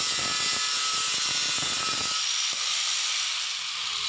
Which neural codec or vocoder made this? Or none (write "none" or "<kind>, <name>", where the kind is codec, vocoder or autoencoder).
none